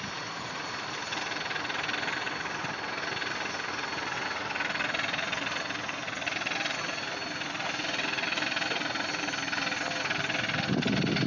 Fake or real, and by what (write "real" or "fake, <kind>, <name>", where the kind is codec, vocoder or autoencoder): real